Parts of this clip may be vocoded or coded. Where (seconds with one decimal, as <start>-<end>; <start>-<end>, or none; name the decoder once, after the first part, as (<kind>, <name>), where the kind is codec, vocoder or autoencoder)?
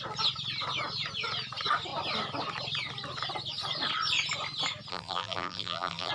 4.9-6.1 (vocoder, BigVGAN v2)